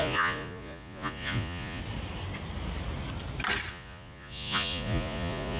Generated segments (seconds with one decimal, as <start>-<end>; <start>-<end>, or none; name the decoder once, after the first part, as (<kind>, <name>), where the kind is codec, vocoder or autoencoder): 0.0-1.8 (vocoder, Vocos); 3.7-5.6